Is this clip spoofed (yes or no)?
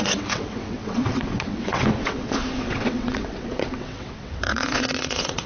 yes